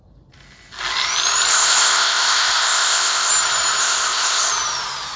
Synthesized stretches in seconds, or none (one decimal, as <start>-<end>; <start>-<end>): 1.5-3.3; 3.8-4.5